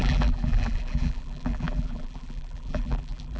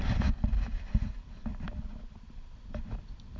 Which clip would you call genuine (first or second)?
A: second